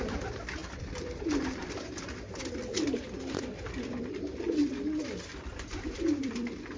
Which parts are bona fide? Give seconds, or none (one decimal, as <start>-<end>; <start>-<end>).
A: 1.6-2.5